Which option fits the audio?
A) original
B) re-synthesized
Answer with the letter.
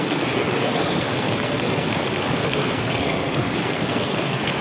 B